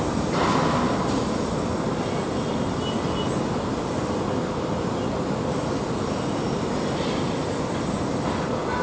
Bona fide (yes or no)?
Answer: yes